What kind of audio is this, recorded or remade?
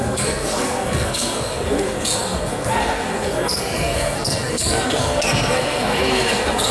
remade